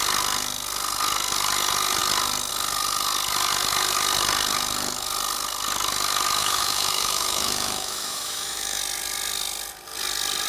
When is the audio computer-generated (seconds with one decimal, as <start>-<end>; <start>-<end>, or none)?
6.4-8.8